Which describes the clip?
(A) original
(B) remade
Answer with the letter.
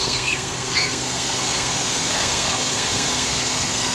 B